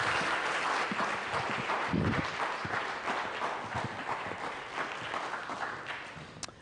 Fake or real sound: real